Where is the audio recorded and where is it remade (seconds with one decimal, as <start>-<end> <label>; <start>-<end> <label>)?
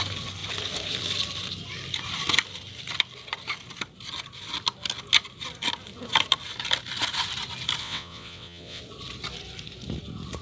0.0-7.8 recorded; 7.8-8.8 remade; 8.8-10.4 recorded